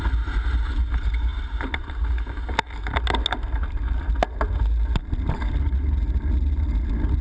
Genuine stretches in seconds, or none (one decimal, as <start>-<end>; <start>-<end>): 0.0-7.2